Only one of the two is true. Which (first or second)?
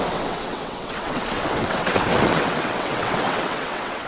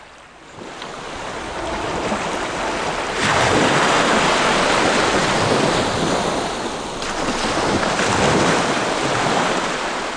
second